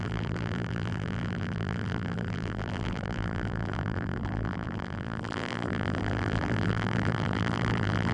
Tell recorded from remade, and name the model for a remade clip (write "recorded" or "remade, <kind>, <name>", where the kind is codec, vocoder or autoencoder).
remade, vocoder, BigVGAN v2